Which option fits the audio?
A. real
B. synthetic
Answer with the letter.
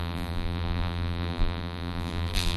B